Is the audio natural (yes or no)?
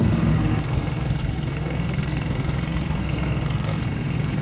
no